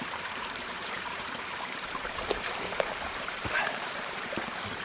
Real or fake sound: fake